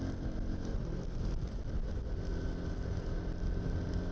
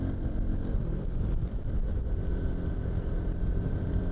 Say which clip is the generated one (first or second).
second